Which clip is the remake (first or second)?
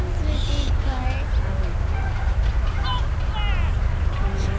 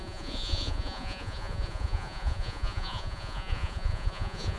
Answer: second